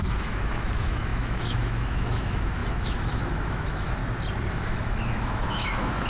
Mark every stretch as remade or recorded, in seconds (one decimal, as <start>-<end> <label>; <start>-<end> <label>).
0.0-4.0 remade; 4.0-4.5 recorded; 4.5-6.1 remade